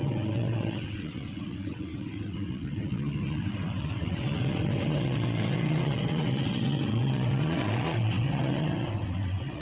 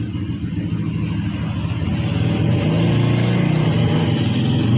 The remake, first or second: first